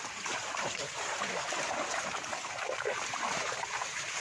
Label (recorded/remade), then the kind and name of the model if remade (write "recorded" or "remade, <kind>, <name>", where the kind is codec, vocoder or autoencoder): remade, vocoder, BigVGAN v2